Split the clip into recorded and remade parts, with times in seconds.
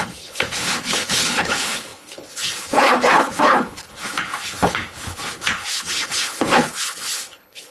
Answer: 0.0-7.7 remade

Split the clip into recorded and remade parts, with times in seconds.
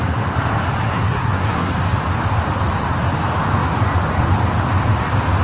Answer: 0.0-0.8 recorded; 0.8-1.7 remade; 1.7-5.4 recorded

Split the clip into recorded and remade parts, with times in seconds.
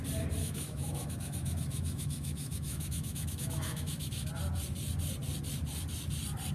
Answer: 0.0-0.4 recorded; 0.4-4.3 remade; 4.3-6.5 recorded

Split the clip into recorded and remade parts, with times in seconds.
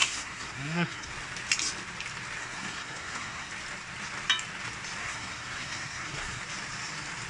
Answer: 0.0-1.1 remade; 1.1-2.4 recorded; 2.4-3.5 remade; 3.5-5.0 recorded; 5.0-6.4 remade; 6.4-7.3 recorded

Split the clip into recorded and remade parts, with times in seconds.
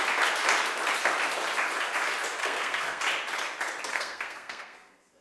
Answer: 0.0-2.4 recorded; 2.4-3.0 remade; 3.0-3.9 recorded; 3.9-5.2 remade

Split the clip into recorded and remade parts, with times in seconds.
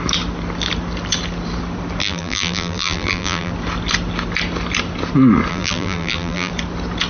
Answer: 0.0-2.0 recorded; 2.0-3.5 remade; 3.5-5.5 recorded; 5.5-6.5 remade; 6.5-7.1 recorded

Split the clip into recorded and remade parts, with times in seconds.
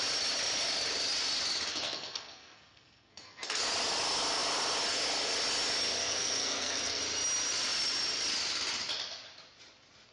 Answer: 0.0-1.7 recorded; 1.7-3.6 remade; 3.6-6.0 recorded; 6.0-7.0 remade; 7.0-10.1 recorded